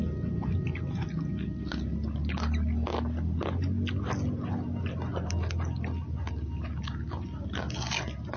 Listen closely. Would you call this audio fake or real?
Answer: real